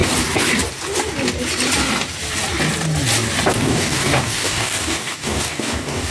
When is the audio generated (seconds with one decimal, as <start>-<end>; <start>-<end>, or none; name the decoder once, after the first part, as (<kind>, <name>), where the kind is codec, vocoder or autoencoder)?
3.5-6.1 (codec, DAC)